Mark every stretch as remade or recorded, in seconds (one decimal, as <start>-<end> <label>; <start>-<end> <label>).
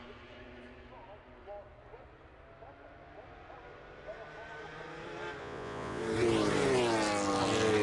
0.0-5.4 recorded; 5.4-6.0 remade; 6.0-7.8 recorded